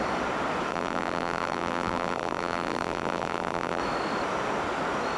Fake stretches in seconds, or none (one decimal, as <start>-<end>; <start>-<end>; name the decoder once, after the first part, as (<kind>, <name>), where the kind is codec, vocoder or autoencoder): 0.7-3.8 (vocoder, BigVGAN v2)